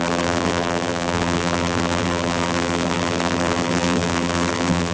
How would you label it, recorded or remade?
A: remade